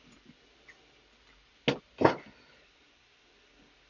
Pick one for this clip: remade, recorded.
recorded